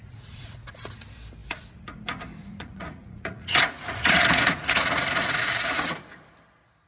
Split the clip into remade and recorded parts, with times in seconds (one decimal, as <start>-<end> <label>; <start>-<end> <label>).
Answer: 0.0-0.8 remade; 0.8-2.4 recorded; 2.4-6.2 remade; 6.2-6.9 recorded

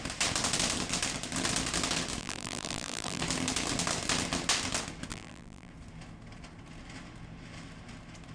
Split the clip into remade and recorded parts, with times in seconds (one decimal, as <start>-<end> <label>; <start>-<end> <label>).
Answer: 0.0-2.2 recorded; 2.2-3.2 remade; 3.2-5.1 recorded; 5.1-5.7 remade; 5.7-8.3 recorded